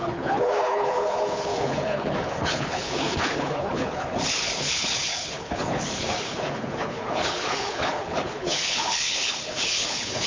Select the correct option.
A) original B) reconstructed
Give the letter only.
B